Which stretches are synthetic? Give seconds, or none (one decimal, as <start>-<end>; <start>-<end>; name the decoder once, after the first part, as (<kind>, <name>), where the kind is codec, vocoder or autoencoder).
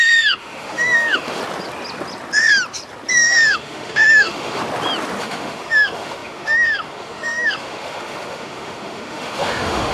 0.0-1.4 (autoencoder, DAC-VAE); 3.1-4.6; 5.2-9.9